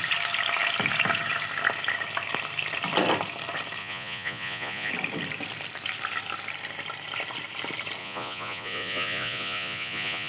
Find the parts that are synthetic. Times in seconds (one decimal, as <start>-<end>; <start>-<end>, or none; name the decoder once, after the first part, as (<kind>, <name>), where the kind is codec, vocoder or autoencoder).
3.8-4.9 (vocoder, Vocos); 8.0-10.3